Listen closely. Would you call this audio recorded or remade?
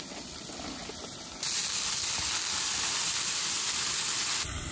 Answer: recorded